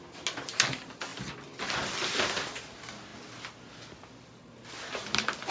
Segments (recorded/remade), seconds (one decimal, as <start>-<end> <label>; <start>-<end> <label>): 0.0-5.5 recorded